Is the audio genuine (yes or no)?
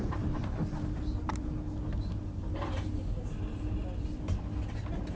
yes